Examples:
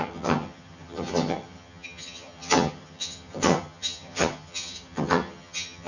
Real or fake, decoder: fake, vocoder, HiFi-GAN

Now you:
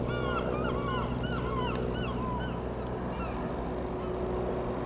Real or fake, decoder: real